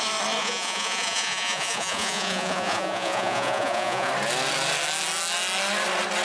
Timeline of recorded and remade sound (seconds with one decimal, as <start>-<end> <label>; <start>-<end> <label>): 0.0-0.4 recorded; 0.4-4.1 remade; 4.1-6.2 recorded